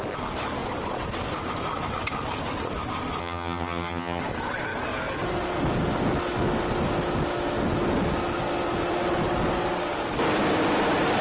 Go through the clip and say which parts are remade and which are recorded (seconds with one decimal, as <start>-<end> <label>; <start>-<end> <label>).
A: 0.0-3.2 recorded; 3.2-4.2 remade; 4.2-11.2 recorded

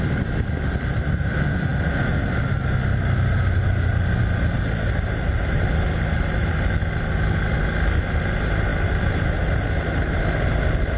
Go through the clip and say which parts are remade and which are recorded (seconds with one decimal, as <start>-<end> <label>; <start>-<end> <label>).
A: 0.0-11.0 recorded

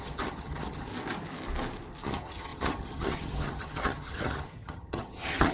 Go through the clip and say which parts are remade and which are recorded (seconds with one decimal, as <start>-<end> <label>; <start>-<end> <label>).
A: 0.0-0.9 remade; 0.9-2.0 recorded; 2.0-5.5 remade